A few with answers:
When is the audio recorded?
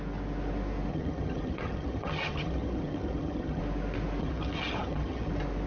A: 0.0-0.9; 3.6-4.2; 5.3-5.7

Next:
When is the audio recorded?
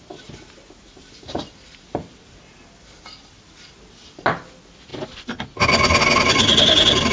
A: 0.0-7.1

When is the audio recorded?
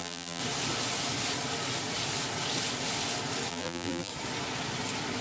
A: 0.4-3.5; 4.1-5.2